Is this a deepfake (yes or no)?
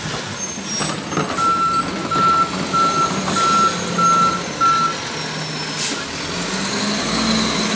no